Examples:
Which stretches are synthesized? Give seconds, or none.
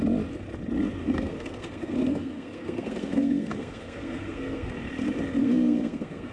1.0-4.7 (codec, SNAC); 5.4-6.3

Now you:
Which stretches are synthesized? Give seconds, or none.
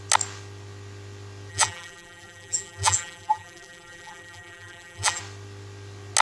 1.5-5.2 (vocoder, BigVGAN v2)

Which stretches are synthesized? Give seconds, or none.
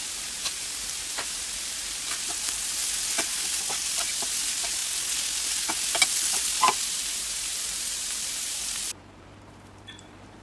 0.0-2.8 (vocoder, BigVGAN v2); 4.1-4.8; 6.3-10.4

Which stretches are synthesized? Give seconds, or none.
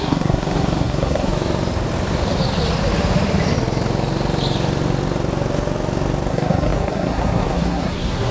0.0-1.3 (codec, SNAC); 6.3-8.3